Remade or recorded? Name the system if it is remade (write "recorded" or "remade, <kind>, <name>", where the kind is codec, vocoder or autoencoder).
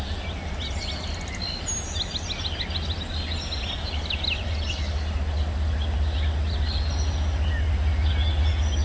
recorded